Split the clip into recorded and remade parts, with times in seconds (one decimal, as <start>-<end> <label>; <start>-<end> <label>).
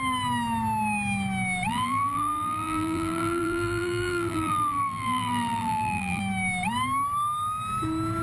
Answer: 0.0-1.7 recorded; 1.7-6.2 remade; 6.2-8.2 recorded